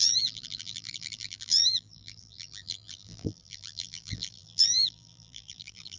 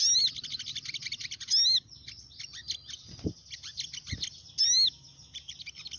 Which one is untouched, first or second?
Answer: second